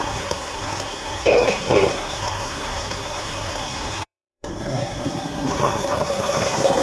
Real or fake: fake